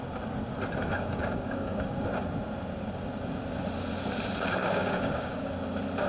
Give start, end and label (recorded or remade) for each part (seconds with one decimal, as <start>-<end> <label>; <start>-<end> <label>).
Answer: 0.0-0.8 recorded; 0.8-2.0 remade; 2.0-4.6 recorded; 4.6-5.5 remade; 5.5-6.1 recorded